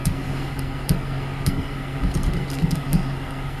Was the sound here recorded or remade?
remade